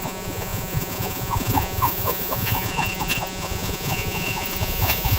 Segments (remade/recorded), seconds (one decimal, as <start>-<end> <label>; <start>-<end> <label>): 0.0-5.2 remade